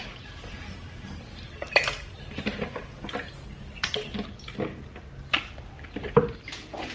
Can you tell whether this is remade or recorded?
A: recorded